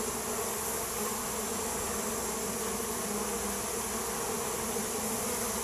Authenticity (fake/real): real